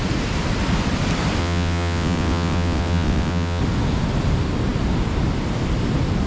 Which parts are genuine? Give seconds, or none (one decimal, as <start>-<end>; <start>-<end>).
0.0-1.4; 3.6-6.3